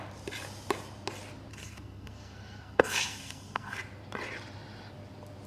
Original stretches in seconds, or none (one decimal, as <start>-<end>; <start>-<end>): 0.0-1.5; 3.8-5.5